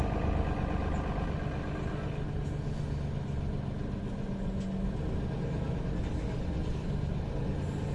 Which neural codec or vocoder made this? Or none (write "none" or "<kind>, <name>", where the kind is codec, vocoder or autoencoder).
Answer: none